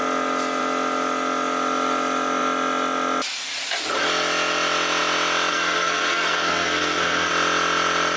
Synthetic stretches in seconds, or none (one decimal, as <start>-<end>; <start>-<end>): 5.5-7.3